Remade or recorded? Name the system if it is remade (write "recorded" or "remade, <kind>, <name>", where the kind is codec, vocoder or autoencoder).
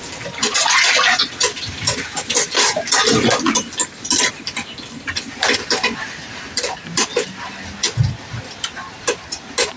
recorded